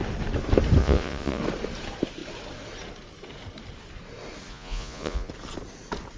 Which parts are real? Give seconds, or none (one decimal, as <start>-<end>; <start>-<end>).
0.0-0.8; 1.4-4.5; 5.3-6.2